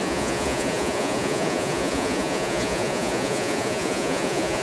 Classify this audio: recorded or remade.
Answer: remade